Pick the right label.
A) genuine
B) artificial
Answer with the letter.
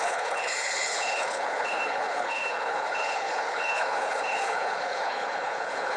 B